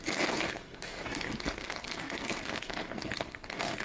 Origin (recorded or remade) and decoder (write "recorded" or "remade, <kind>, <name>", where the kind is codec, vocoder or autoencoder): remade, codec, SNAC